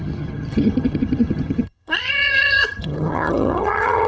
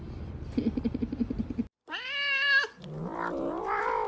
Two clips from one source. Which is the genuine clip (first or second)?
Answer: second